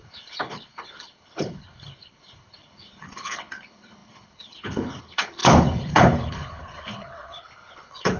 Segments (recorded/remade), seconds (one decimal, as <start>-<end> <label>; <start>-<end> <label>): 0.0-8.2 remade